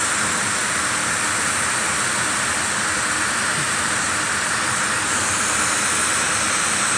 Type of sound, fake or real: real